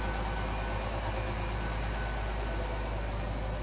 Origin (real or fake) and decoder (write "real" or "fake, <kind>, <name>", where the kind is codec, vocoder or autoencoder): real